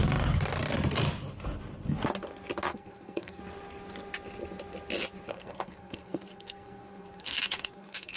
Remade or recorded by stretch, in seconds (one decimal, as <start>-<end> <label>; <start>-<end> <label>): 0.0-2.7 recorded; 2.7-3.4 remade; 3.4-5.3 recorded; 5.3-8.2 remade